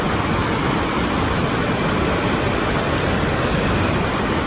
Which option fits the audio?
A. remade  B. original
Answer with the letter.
B